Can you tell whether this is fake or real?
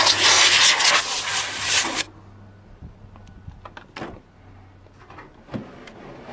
real